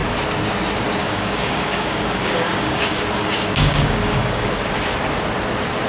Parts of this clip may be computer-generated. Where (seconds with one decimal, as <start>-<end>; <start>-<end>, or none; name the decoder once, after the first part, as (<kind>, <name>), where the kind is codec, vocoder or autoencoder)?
1.0-4.5 (codec, DAC)